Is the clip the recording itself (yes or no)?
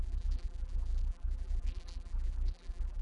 no